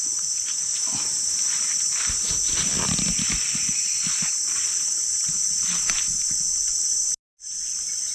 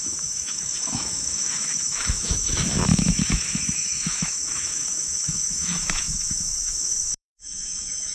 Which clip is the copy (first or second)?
second